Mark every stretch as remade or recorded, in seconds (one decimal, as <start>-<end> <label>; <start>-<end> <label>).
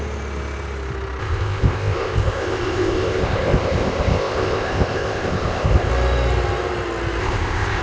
0.0-1.2 recorded; 1.2-5.9 remade; 5.9-7.2 recorded; 7.2-7.8 remade